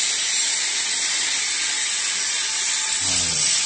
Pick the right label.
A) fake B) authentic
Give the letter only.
B